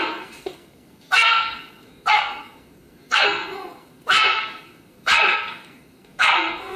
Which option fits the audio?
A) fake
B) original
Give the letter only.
A